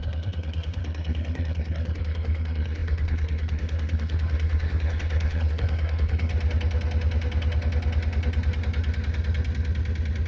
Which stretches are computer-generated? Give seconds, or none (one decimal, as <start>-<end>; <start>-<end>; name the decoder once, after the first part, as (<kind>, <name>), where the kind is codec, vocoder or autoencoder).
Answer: 0.0-6.3 (codec, SNAC)